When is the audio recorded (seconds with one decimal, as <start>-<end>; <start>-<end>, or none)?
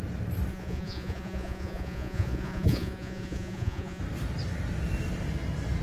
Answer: 0.0-0.5; 4.0-5.8